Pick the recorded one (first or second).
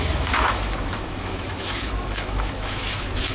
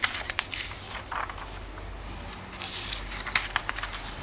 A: second